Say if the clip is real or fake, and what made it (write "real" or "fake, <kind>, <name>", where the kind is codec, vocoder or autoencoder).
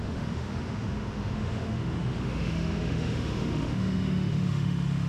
fake, autoencoder, DAC-VAE